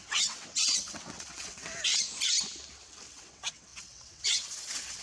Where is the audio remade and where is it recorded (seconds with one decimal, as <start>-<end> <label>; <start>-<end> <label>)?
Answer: 0.0-1.7 remade; 1.7-3.1 recorded; 3.1-5.0 remade

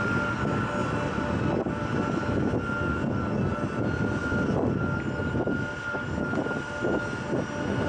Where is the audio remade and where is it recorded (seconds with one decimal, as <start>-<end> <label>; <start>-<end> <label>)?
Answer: 0.0-7.9 recorded

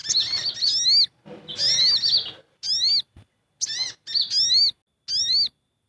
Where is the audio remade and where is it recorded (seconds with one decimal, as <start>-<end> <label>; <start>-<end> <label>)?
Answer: 0.0-5.9 recorded

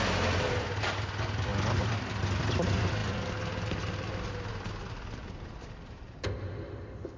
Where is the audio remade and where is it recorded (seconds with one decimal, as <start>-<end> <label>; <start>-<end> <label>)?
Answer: 0.0-7.2 recorded

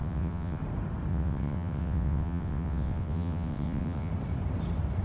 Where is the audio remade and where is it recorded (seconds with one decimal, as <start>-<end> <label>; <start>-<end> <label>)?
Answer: 0.0-0.6 remade; 0.6-1.1 recorded; 1.1-4.1 remade; 4.1-5.0 recorded

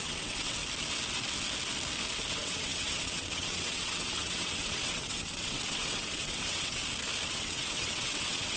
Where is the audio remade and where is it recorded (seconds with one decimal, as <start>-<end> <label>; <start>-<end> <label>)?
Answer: 0.0-0.6 remade; 0.6-2.3 recorded; 2.3-6.8 remade; 6.8-7.3 recorded; 7.3-8.6 remade

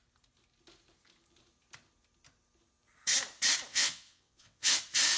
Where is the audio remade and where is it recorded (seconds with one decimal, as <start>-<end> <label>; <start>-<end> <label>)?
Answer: 0.0-3.7 recorded; 3.7-4.8 remade; 4.8-5.2 recorded